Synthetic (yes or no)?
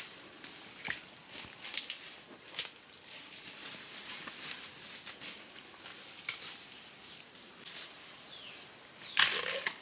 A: no